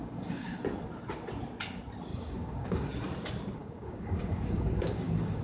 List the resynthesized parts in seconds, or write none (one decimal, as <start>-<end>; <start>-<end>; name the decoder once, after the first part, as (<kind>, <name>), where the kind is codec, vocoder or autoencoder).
0.0-0.6 (codec, DAC); 2.1-2.9; 3.6-5.4